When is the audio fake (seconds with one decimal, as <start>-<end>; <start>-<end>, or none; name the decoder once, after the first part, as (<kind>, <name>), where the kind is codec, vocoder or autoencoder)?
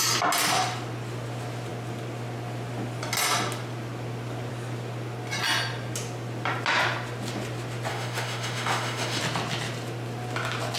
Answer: 7.9-9.2 (autoencoder, DAC-VAE)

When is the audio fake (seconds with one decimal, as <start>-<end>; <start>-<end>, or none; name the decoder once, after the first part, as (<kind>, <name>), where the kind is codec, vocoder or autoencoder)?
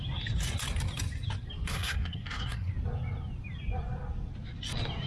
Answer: 1.7-2.7 (codec, SNAC)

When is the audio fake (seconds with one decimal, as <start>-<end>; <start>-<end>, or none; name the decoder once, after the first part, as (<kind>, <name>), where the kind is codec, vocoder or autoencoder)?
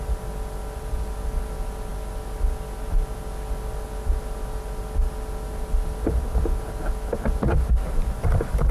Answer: none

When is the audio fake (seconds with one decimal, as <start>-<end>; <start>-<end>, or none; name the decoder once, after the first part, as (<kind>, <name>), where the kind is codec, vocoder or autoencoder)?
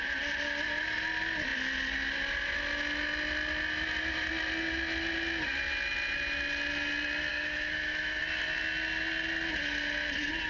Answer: 7.3-8.2 (autoencoder, DAC-VAE)